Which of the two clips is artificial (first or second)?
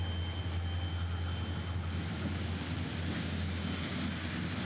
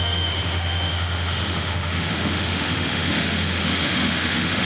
second